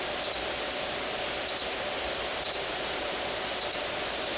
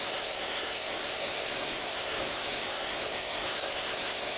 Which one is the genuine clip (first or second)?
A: first